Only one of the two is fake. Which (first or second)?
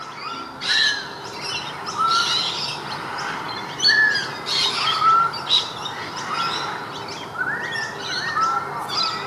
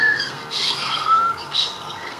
second